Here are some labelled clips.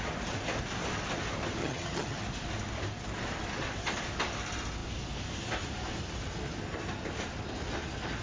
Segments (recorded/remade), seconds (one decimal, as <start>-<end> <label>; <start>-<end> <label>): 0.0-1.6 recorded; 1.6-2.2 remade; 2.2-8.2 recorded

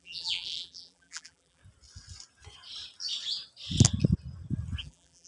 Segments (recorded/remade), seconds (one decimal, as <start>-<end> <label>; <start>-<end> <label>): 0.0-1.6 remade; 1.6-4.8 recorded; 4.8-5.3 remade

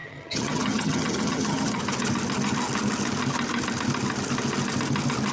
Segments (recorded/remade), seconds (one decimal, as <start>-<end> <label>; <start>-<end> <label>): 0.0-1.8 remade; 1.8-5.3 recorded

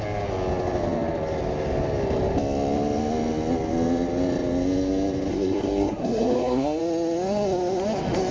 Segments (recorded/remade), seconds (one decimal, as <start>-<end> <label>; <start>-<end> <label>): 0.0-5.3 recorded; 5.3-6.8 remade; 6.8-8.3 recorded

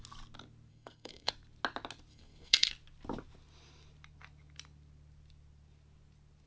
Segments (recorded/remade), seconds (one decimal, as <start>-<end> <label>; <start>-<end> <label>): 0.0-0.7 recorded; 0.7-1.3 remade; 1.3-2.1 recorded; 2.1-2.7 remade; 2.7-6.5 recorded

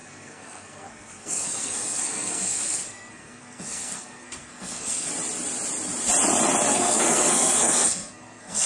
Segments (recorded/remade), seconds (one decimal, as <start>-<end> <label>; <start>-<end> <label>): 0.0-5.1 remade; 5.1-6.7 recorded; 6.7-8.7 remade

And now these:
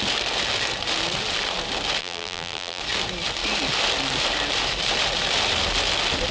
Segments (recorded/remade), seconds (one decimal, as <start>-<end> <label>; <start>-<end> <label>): 0.0-2.0 recorded; 2.0-2.8 remade; 2.8-6.3 recorded